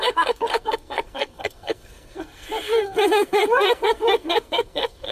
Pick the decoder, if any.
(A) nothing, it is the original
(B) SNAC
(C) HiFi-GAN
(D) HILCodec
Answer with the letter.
B